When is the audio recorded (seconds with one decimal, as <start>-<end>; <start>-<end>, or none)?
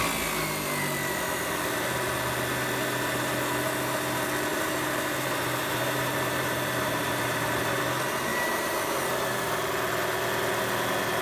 0.0-4.5; 7.8-8.3; 8.9-11.2